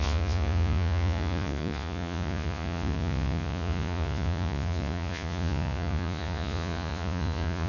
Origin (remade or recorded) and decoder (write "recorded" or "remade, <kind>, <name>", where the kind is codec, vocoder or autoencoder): remade, vocoder, Vocos